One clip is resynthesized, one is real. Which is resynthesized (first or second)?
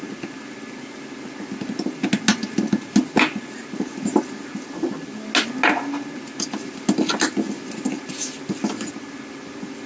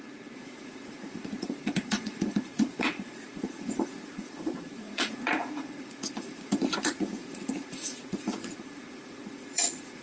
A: second